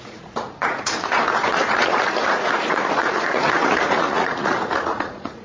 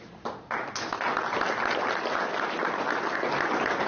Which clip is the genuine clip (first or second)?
second